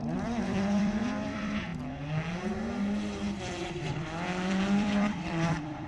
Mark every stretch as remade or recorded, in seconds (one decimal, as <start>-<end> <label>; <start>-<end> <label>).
0.0-1.7 remade; 1.7-3.4 recorded; 3.4-5.9 remade